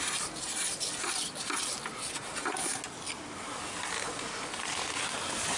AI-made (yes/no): no